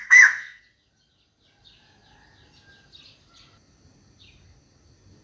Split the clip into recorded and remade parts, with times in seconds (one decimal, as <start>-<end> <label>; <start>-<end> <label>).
0.0-0.6 remade; 0.6-5.2 recorded